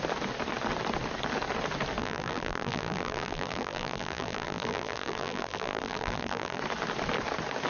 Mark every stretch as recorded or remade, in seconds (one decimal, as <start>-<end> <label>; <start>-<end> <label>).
0.0-2.0 recorded; 2.0-6.6 remade; 6.6-7.7 recorded